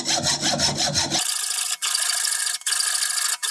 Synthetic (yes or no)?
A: no